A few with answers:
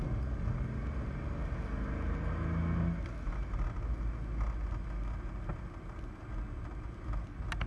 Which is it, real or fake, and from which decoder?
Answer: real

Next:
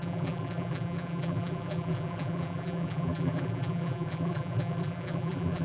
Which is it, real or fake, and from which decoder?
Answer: fake, vocoder, BigVGAN v2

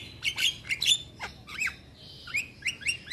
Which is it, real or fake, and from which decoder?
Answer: real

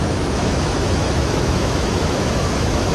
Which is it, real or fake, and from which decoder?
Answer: fake, autoencoder, DAC-VAE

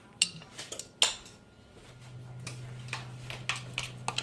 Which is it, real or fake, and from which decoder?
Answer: real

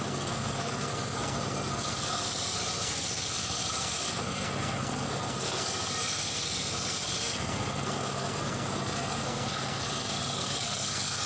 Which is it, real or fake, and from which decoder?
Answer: fake, codec, SNAC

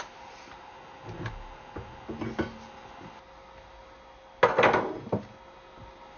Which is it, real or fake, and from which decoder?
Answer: real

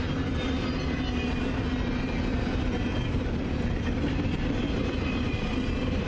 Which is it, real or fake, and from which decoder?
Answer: real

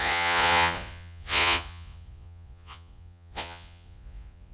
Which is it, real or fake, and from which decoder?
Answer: fake, vocoder, Vocos